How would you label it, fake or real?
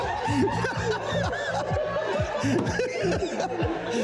real